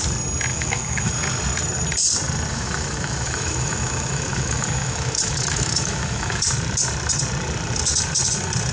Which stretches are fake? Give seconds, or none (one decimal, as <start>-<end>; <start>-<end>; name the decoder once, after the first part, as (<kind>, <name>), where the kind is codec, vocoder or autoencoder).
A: 0.5-1.1 (autoencoder, DAC-VAE); 2.5-6.4